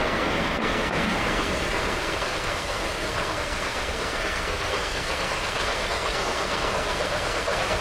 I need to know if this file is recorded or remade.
remade